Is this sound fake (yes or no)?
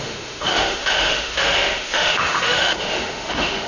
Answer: yes